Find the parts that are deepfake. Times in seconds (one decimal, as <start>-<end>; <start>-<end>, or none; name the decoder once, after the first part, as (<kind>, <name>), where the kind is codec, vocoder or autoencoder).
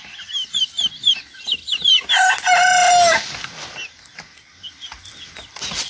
none